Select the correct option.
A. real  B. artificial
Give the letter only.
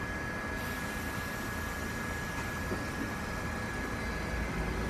A